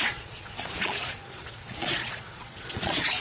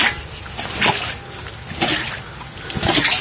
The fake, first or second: first